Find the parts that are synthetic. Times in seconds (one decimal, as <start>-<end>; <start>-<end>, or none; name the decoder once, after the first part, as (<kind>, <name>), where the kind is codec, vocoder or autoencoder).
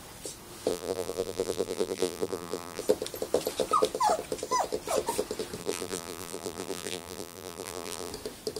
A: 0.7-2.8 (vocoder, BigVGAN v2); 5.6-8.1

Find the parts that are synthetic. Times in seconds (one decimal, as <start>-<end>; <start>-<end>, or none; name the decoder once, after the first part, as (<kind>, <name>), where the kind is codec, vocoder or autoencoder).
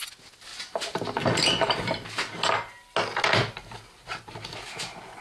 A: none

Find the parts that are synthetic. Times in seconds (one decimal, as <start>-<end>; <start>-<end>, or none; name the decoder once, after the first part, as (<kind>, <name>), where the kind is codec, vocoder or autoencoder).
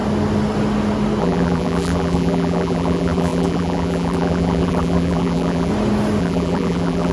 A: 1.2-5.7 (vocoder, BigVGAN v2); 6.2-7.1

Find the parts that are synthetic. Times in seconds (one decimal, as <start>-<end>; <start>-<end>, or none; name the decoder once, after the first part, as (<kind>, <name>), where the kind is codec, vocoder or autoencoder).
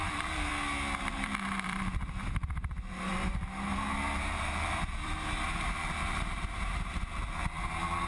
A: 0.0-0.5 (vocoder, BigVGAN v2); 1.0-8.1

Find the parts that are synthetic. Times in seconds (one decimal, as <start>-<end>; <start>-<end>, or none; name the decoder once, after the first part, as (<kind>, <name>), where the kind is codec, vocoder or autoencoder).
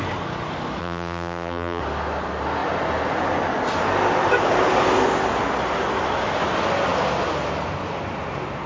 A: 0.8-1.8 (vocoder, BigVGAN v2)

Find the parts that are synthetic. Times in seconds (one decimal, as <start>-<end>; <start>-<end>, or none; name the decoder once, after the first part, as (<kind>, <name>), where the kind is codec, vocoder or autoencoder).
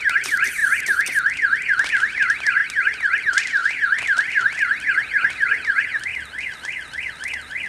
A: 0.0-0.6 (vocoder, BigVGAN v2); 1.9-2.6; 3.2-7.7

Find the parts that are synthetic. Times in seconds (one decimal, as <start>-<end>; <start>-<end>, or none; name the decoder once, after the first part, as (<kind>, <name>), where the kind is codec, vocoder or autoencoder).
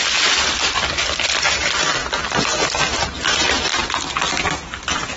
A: 0.0-1.0 (vocoder, BigVGAN v2)